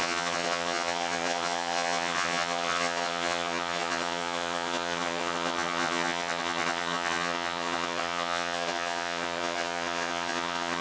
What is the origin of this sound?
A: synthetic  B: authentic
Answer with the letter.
A